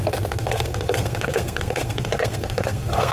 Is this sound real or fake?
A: fake